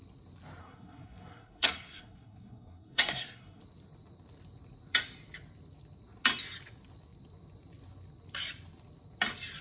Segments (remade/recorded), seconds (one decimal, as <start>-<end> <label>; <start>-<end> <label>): 0.0-0.6 recorded; 0.6-3.6 remade; 3.6-9.6 recorded